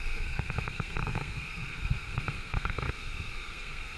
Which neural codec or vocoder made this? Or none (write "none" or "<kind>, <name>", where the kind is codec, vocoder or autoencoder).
codec, SNAC